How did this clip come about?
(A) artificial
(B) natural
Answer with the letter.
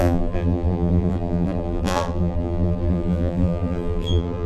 A